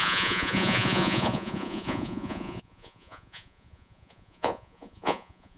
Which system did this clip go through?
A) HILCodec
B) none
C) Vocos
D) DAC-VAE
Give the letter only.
C